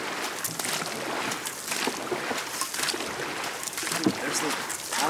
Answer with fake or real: real